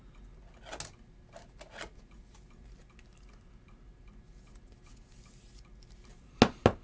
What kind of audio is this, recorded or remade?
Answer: recorded